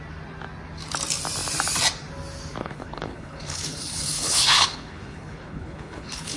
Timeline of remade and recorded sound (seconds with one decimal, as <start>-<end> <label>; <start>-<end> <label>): 0.0-2.6 recorded; 2.6-6.4 remade